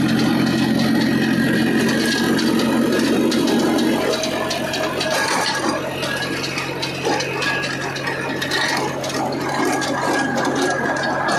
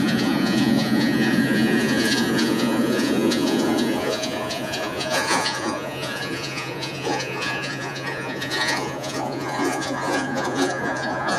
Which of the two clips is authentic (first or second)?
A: first